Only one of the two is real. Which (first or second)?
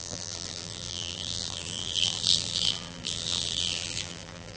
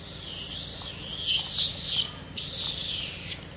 second